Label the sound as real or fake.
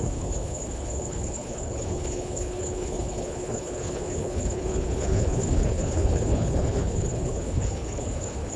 fake